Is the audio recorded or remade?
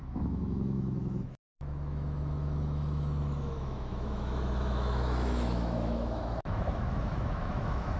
remade